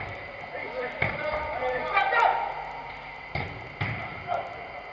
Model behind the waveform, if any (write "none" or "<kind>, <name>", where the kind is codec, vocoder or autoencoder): none